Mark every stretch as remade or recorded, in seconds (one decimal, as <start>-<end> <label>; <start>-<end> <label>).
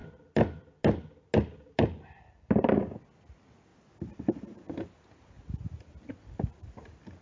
0.0-7.2 recorded